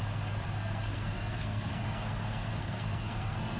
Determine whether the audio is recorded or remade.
remade